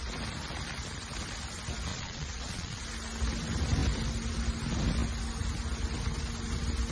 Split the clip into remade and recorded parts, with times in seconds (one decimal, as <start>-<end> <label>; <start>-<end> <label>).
0.0-1.9 recorded; 1.9-2.8 remade; 2.8-6.9 recorded